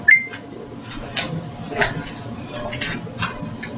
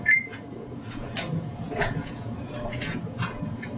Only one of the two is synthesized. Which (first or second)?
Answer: second